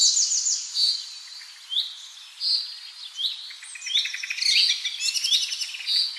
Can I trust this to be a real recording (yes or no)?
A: yes